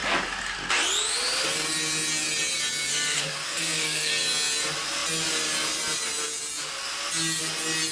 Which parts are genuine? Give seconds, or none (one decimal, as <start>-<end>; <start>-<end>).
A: 0.0-2.9; 4.1-7.9